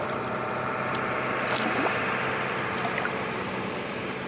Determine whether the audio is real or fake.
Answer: real